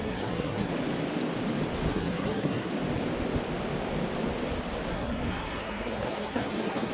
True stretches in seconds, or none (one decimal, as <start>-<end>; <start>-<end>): 0.7-1.9; 2.7-4.9

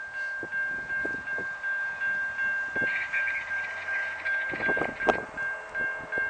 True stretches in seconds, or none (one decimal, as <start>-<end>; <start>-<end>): 0.0-6.3